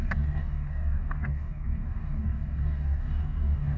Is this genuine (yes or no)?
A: no